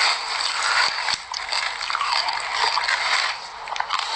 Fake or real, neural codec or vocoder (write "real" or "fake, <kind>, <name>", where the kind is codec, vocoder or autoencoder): real